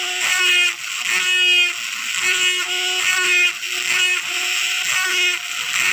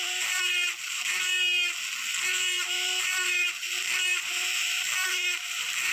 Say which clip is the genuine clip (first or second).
first